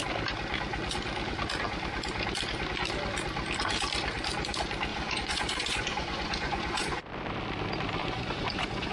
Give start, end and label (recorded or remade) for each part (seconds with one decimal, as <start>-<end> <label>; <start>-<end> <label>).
0.0-4.9 recorded; 4.9-7.0 remade; 7.0-8.0 recorded; 8.0-8.9 remade